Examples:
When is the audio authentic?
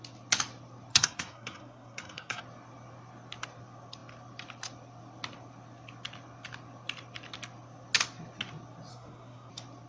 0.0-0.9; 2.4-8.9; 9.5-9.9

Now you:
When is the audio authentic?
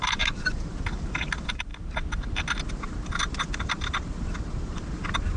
0.0-5.4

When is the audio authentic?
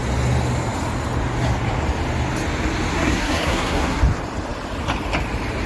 0.0-2.9; 4.0-5.7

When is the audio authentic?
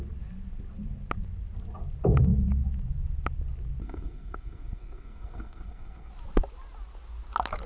0.0-3.8; 6.1-7.7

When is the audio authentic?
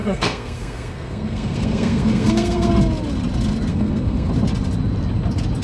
2.7-3.7; 4.3-5.6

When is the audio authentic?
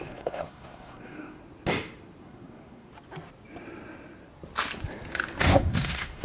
1.4-2.2; 2.9-5.4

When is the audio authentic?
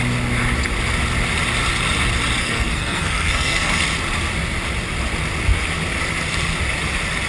0.0-2.4; 3.7-7.3